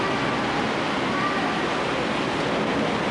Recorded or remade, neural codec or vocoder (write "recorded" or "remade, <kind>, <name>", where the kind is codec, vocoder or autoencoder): recorded